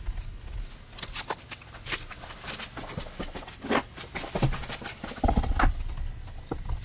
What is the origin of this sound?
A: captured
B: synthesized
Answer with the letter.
A